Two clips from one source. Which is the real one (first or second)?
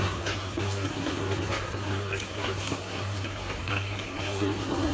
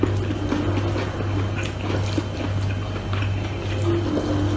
second